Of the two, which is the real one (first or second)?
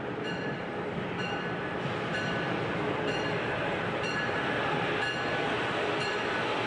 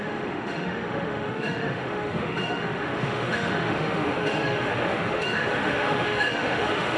first